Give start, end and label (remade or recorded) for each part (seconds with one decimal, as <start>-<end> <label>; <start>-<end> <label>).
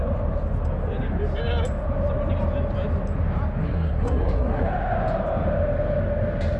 0.0-3.6 recorded; 3.6-4.7 remade; 4.7-6.6 recorded